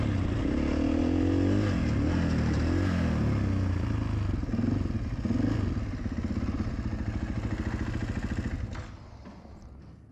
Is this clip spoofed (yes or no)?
no